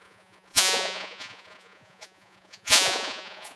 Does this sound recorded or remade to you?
remade